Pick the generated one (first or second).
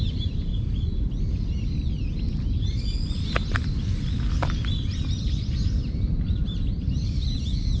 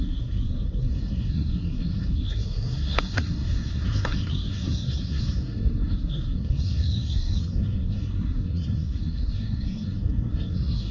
second